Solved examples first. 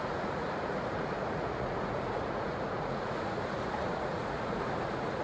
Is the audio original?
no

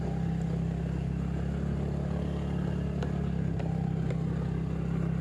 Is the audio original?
yes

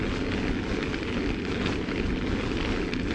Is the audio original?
yes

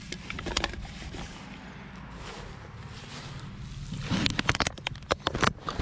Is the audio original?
yes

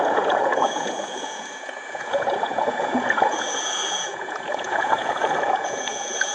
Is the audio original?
no